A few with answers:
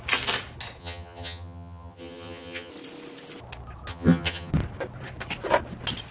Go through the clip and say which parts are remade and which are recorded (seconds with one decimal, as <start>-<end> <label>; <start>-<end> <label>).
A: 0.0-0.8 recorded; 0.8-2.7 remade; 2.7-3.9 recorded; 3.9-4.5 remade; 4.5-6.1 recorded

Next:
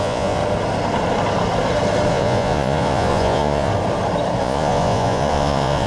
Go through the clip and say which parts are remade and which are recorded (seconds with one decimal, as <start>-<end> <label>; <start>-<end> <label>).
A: 0.0-0.4 remade; 0.4-2.1 recorded; 2.1-3.7 remade; 3.7-4.4 recorded; 4.4-5.9 remade

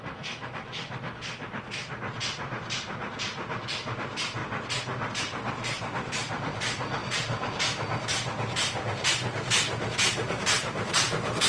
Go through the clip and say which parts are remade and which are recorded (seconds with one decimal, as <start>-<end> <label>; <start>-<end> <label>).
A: 0.0-4.4 remade; 4.4-5.1 recorded; 5.1-11.5 remade

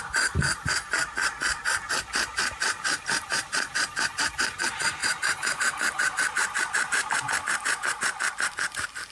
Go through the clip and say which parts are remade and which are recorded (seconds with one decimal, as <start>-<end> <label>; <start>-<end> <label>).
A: 0.0-5.0 recorded; 5.0-5.6 remade; 5.6-9.1 recorded

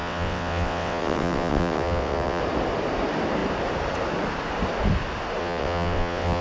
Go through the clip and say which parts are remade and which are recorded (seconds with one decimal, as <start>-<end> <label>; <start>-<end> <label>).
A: 0.0-2.4 remade; 2.4-5.4 recorded; 5.4-6.4 remade

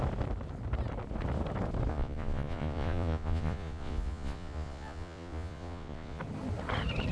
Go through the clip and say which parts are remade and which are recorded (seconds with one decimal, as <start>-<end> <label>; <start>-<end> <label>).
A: 0.0-1.9 recorded; 1.9-6.2 remade; 6.2-7.1 recorded

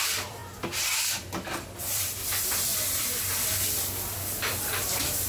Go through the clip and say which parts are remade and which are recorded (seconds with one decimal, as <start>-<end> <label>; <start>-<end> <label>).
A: 0.0-0.4 remade; 0.4-1.8 recorded; 1.8-5.3 remade

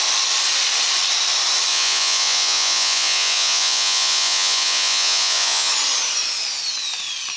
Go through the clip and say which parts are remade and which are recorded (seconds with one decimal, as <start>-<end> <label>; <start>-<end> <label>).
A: 0.0-1.7 recorded; 1.7-5.7 remade; 5.7-7.4 recorded